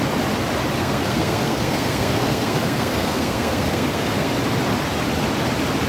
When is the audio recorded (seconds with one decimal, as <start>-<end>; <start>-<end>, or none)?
0.0-0.8; 4.3-5.9